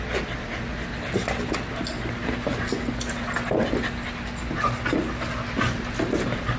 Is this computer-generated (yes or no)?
no